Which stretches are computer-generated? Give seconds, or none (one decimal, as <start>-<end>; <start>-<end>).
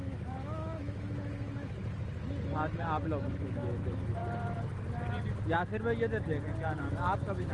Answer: 0.0-1.8; 3.3-4.2; 6.8-7.5